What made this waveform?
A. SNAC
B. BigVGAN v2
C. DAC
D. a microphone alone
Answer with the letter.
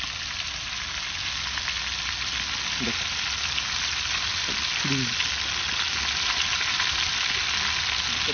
D